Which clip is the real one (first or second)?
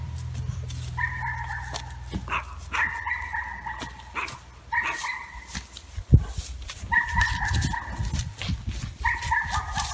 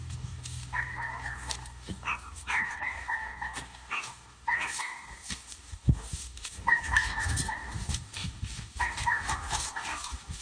first